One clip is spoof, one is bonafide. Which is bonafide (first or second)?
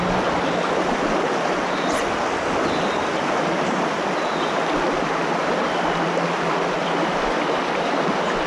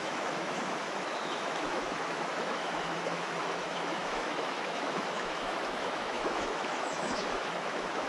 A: first